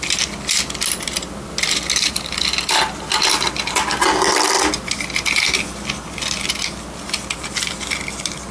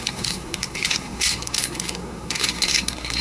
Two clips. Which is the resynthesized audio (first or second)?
second